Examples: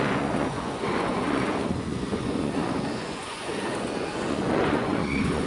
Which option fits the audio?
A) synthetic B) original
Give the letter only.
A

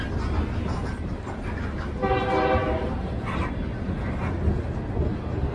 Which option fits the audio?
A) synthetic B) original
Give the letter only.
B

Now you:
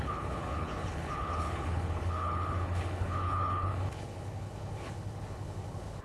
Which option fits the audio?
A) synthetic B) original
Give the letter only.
A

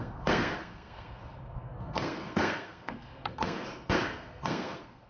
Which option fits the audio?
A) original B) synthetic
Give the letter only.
B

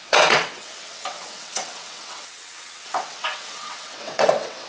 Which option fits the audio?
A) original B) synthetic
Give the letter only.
B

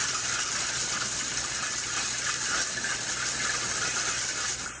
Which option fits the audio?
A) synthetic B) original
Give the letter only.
A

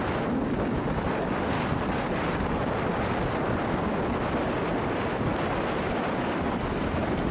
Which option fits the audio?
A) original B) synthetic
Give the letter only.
A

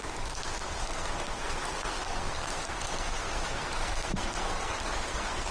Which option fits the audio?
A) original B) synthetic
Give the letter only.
B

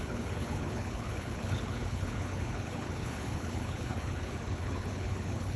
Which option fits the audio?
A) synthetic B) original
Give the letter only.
A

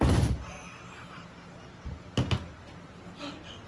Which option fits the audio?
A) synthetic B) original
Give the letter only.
B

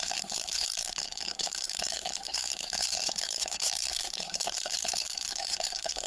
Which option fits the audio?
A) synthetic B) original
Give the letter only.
A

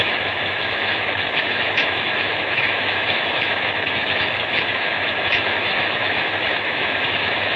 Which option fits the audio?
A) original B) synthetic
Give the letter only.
B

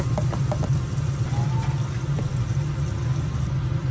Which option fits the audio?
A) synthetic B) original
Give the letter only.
B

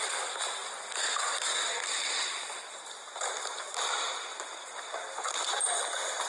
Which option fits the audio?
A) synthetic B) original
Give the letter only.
B